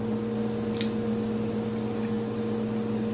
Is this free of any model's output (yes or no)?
yes